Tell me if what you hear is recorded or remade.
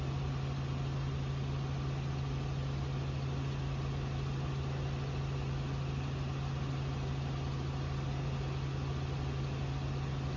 recorded